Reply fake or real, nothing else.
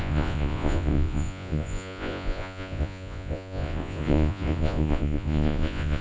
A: fake